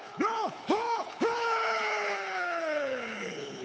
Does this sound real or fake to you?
fake